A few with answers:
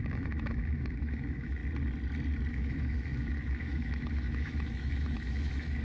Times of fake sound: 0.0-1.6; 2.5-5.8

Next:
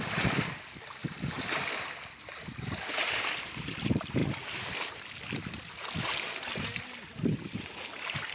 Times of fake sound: none

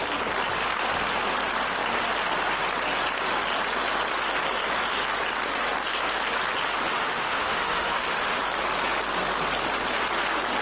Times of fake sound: 6.9-8.4